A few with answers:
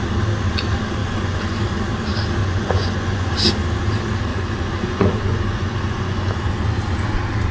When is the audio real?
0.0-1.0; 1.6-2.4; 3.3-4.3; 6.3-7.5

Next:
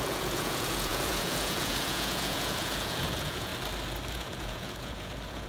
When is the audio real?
3.5-4.1

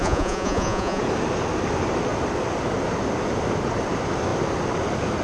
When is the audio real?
1.0-5.2

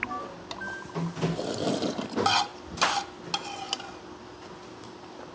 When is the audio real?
0.0-5.3

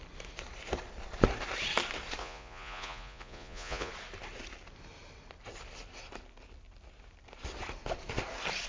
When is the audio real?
0.0-2.2; 3.9-8.7